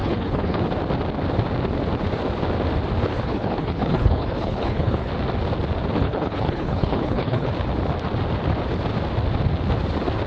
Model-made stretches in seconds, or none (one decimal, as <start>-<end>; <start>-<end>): 0.0-0.6; 3.1-5.1; 6.0-7.5